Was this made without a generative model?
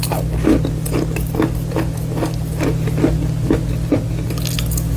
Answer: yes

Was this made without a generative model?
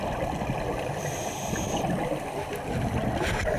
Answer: yes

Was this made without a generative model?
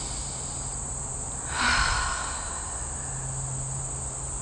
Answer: yes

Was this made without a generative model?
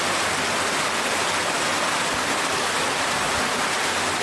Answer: yes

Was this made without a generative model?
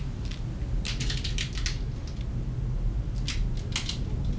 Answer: yes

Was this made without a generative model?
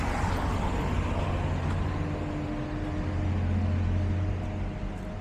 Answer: yes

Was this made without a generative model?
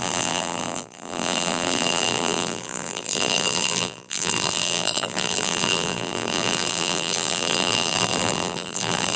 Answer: no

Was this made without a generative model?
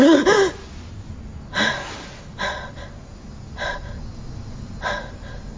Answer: yes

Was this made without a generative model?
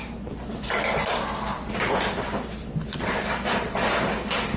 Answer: yes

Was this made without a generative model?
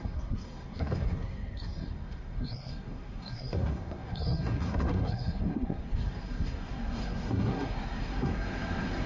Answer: no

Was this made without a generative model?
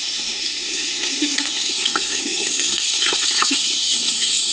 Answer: no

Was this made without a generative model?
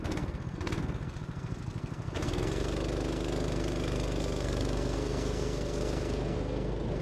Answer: no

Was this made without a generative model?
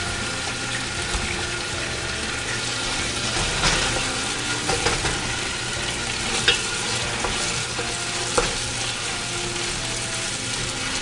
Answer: yes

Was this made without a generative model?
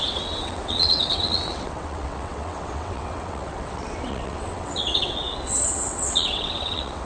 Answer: no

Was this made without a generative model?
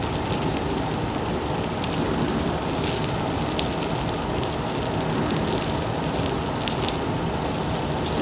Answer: yes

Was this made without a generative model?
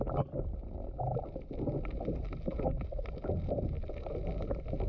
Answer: yes